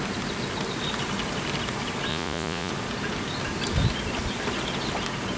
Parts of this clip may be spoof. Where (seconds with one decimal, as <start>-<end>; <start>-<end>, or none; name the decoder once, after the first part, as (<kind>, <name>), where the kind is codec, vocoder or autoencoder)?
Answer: 2.1-2.7 (vocoder, Vocos)